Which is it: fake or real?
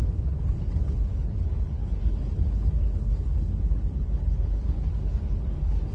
fake